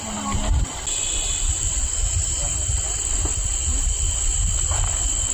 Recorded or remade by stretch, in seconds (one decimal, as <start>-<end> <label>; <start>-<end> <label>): 0.0-5.3 recorded